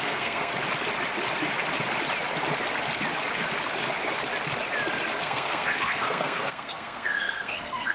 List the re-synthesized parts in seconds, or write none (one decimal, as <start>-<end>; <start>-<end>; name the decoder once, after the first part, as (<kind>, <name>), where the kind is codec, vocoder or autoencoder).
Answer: 0.0-0.5 (codec, SNAC); 5.2-7.9

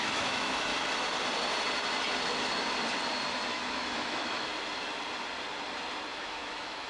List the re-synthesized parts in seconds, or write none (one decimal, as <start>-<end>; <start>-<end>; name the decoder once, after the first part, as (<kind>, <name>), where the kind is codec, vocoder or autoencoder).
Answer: 0.0-0.7 (autoencoder, DAC-VAE); 3.5-4.5; 6.1-6.9